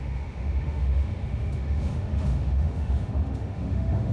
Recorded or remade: remade